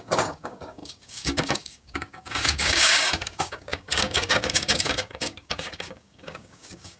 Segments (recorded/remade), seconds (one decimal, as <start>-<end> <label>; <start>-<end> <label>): 0.0-7.0 remade